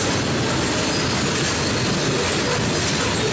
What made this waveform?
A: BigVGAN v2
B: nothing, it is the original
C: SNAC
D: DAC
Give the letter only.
B